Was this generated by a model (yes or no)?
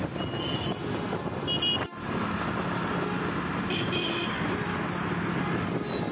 no